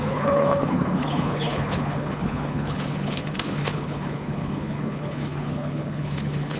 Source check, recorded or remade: remade